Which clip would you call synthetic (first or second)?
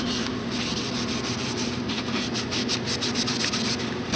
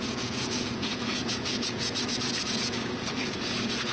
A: second